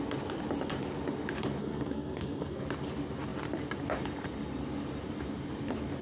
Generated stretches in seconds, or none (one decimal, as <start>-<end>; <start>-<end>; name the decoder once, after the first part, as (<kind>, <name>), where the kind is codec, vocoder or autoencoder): 1.6-2.6 (codec, SNAC)